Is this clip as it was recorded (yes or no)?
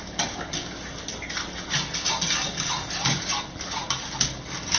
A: yes